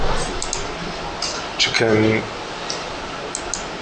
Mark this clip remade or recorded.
recorded